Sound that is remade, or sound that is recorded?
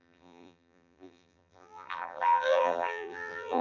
remade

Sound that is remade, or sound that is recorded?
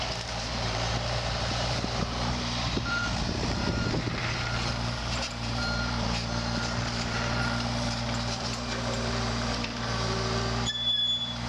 remade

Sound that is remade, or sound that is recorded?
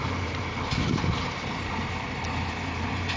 remade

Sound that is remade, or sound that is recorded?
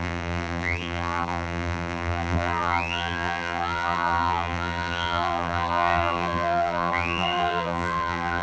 remade